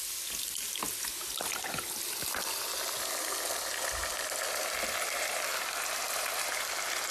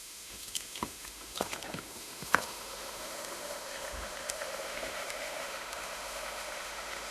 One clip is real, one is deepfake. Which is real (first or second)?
first